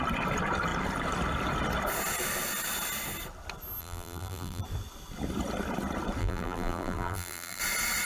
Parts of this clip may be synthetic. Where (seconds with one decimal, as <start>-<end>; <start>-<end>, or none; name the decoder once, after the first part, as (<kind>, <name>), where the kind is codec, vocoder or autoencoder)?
3.8-4.6 (vocoder, BigVGAN v2); 6.2-7.6